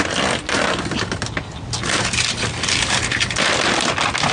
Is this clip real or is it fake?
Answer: real